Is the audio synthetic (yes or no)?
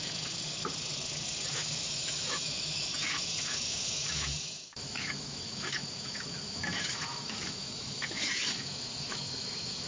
yes